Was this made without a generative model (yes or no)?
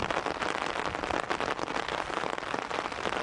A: yes